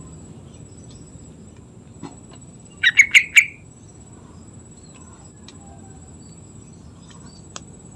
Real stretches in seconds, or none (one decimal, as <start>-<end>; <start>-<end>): 0.0-2.4; 2.9-8.0